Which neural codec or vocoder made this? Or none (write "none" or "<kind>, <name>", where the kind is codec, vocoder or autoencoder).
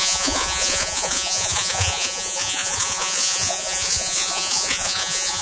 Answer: vocoder, Vocos